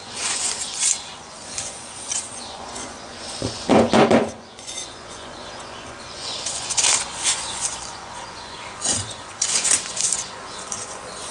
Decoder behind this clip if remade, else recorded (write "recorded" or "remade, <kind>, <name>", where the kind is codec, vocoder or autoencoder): remade, vocoder, Vocos